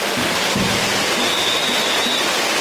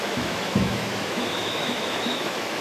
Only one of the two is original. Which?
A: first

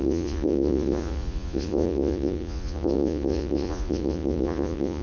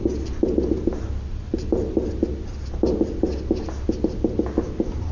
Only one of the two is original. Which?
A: second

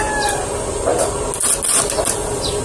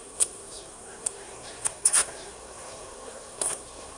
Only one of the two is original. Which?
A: first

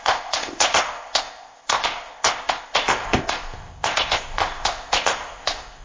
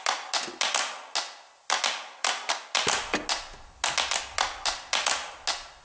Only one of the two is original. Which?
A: second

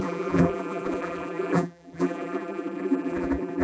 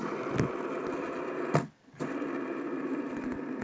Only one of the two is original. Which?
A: second